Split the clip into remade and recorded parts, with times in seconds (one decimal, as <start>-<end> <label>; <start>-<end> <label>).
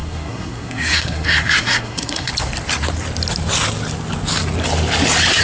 0.0-2.3 remade; 2.3-5.4 recorded